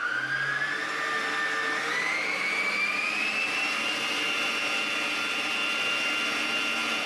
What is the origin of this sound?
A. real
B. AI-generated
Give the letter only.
A